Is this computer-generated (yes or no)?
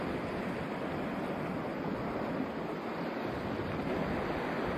no